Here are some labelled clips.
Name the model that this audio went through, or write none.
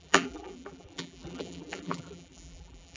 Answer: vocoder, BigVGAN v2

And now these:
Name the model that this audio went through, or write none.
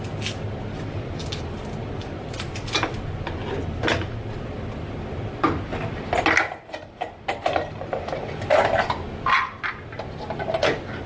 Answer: none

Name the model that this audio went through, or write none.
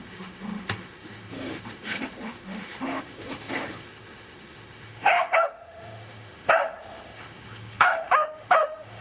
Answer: autoencoder, DAC-VAE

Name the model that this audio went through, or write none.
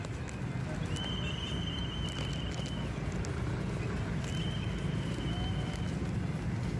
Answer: none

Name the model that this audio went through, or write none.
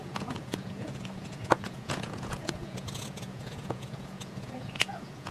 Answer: vocoder, Vocos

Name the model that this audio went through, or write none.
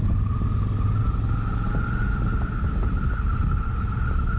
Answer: none